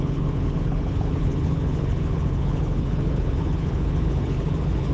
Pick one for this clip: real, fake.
fake